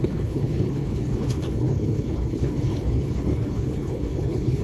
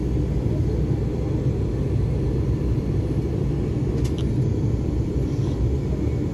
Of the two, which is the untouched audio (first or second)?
second